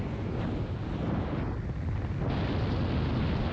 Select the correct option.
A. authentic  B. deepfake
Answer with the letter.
A